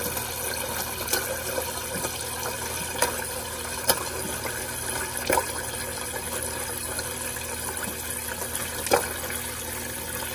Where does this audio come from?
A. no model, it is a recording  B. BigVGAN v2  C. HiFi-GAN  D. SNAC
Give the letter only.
A